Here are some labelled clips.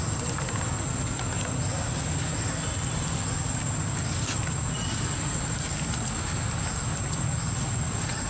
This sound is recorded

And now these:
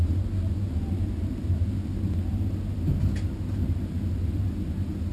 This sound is recorded